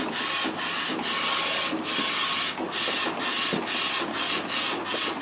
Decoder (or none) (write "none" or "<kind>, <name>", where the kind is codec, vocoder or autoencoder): none